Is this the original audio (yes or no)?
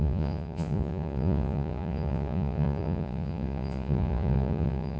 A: no